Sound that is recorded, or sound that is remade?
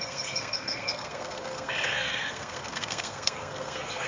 remade